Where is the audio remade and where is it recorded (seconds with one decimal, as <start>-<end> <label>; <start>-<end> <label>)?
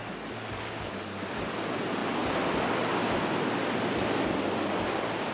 0.0-5.3 recorded